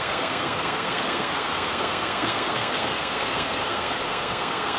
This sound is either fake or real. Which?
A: fake